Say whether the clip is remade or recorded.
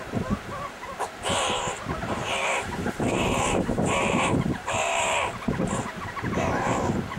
remade